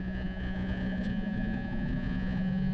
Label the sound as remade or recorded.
remade